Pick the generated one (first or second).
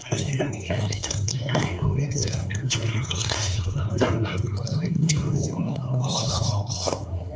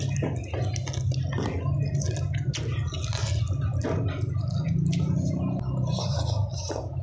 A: first